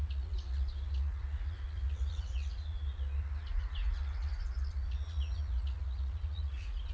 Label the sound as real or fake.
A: fake